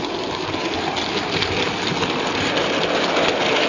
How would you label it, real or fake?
real